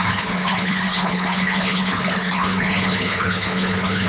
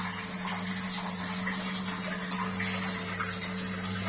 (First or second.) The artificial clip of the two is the first